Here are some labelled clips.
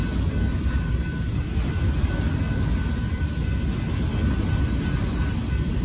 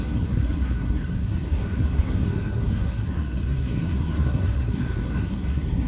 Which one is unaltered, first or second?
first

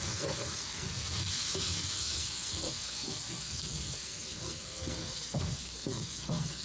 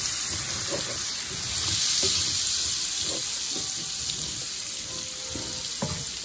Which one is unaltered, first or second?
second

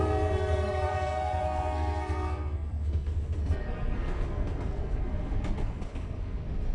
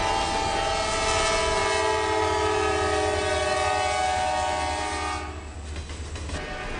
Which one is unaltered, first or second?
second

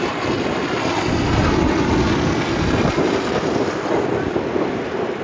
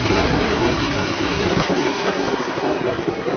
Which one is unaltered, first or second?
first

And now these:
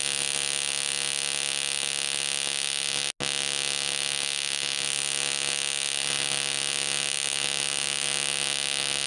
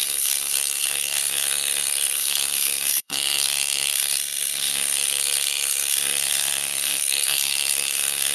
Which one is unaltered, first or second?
first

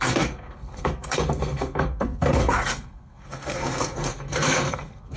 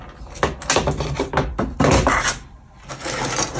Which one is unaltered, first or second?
second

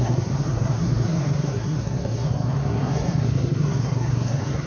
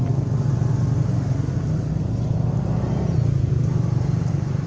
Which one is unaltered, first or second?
second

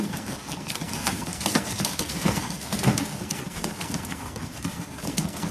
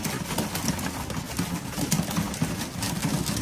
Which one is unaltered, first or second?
second